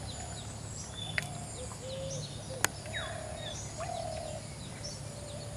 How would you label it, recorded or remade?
recorded